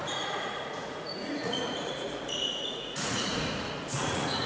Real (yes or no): no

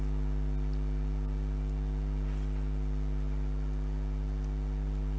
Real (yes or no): yes